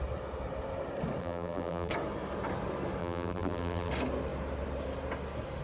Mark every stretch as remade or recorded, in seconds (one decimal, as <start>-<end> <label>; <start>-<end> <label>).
0.0-1.2 recorded; 1.2-1.9 remade; 1.9-3.0 recorded; 3.0-3.9 remade; 3.9-5.6 recorded